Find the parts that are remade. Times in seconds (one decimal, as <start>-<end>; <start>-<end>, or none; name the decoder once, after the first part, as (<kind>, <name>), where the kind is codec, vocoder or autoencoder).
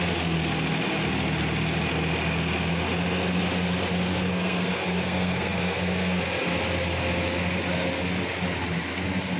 4.1-6.2 (codec, SNAC)